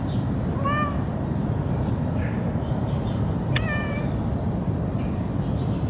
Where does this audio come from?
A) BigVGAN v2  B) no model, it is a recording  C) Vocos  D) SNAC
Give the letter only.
B